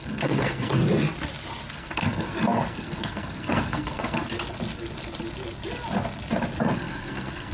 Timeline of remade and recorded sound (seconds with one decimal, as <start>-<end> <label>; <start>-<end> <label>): 0.0-0.8 remade; 0.8-1.7 recorded; 1.7-4.2 remade; 4.2-6.6 recorded; 6.6-7.5 remade

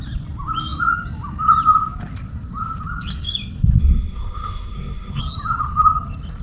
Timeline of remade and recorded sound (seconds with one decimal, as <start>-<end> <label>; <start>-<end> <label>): 0.0-3.8 recorded; 3.8-5.2 remade; 5.2-6.4 recorded

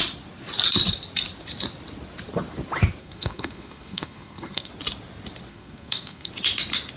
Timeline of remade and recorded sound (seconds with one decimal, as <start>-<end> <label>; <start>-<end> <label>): 0.0-3.0 recorded; 3.0-4.7 remade; 4.7-5.5 recorded; 5.5-6.3 remade; 6.3-7.0 recorded

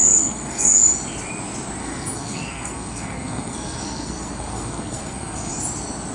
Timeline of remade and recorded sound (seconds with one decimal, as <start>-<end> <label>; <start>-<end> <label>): 0.0-0.8 remade; 0.8-1.8 recorded; 1.8-5.5 remade; 5.5-6.1 recorded

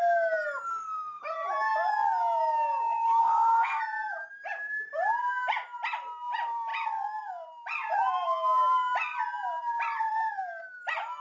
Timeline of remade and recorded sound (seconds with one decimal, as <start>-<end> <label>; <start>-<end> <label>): 0.0-0.7 recorded; 0.7-1.2 remade; 1.2-3.2 recorded; 3.2-3.8 remade; 3.8-11.2 recorded